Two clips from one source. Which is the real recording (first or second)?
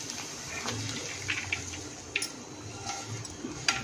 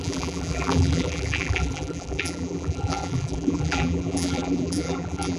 first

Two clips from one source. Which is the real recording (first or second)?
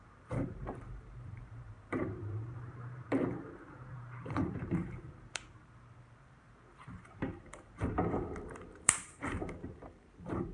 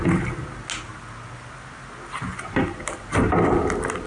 second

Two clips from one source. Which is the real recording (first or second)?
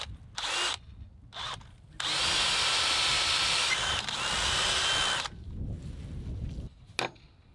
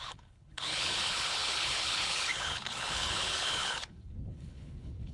first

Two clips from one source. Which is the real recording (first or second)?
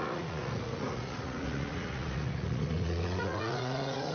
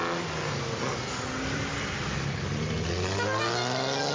second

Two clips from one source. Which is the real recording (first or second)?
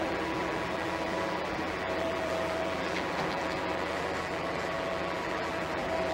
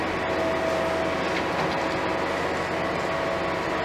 second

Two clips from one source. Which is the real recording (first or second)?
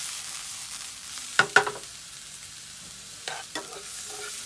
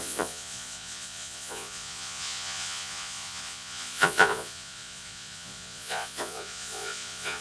first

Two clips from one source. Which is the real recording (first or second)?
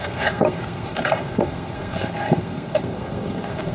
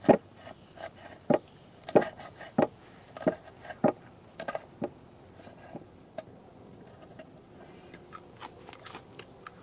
second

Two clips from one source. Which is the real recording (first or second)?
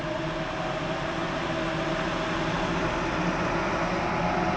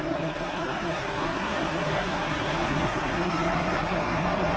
first